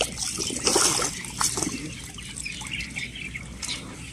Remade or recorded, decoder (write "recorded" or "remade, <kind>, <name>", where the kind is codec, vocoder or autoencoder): recorded